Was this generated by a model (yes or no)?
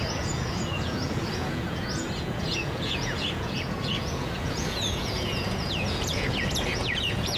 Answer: yes